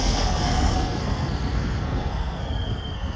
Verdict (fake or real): fake